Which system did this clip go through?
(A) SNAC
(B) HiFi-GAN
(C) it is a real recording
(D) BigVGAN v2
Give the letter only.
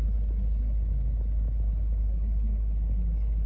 C